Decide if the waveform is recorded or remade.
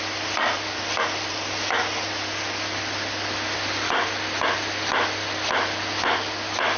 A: recorded